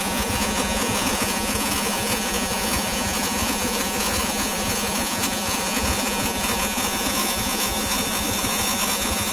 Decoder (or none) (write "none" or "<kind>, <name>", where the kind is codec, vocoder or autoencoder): vocoder, Vocos